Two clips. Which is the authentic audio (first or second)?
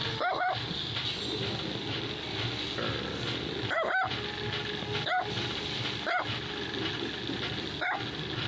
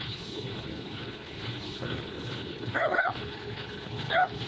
first